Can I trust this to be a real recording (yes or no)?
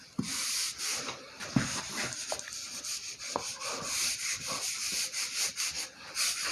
no